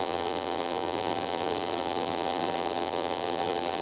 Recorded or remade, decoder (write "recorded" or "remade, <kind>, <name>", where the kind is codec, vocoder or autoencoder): remade, vocoder, BigVGAN v2